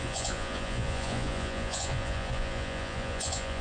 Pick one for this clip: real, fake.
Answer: fake